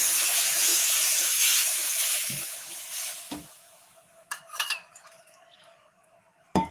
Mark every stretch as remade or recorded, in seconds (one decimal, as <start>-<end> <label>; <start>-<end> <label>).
0.0-6.7 remade